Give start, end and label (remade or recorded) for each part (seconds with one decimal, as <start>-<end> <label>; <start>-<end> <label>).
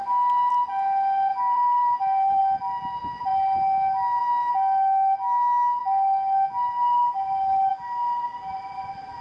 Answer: 0.0-1.3 recorded; 1.3-2.4 remade; 2.4-9.2 recorded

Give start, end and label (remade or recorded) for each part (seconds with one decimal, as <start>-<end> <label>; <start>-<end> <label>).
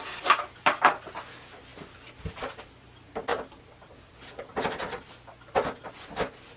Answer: 0.0-3.3 recorded; 3.3-4.1 remade; 4.1-6.6 recorded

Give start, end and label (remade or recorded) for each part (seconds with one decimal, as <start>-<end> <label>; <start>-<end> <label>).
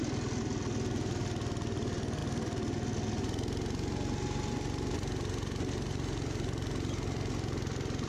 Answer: 0.0-8.1 recorded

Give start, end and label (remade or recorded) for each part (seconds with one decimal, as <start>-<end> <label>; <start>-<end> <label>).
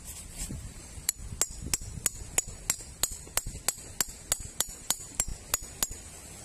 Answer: 0.0-1.2 remade; 1.2-4.4 recorded; 4.4-5.3 remade; 5.3-6.4 recorded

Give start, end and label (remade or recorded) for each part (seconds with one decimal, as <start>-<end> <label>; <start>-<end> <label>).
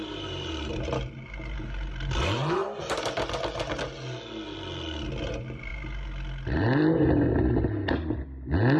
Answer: 0.0-2.6 remade; 2.6-5.2 recorded; 5.2-5.7 remade; 5.7-8.8 recorded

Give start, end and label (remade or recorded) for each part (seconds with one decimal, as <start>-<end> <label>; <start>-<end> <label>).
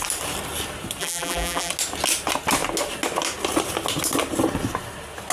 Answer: 0.0-1.0 recorded; 1.0-1.7 remade; 1.7-5.3 recorded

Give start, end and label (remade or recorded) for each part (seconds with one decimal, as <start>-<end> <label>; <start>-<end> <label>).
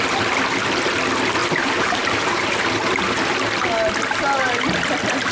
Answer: 0.0-1.4 recorded; 1.4-2.6 remade; 2.6-5.3 recorded